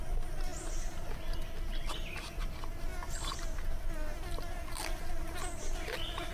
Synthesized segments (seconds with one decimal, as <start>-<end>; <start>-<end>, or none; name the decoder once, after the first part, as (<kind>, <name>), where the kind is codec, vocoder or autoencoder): none